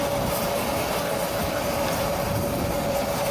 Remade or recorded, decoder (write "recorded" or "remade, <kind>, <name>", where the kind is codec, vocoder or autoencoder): recorded